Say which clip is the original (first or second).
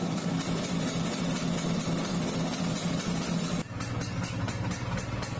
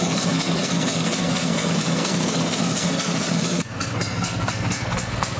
first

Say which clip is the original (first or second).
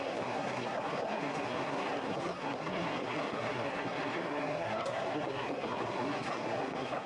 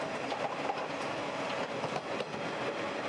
second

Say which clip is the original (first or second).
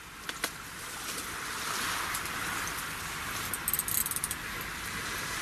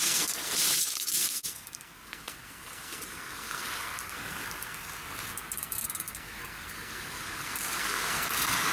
first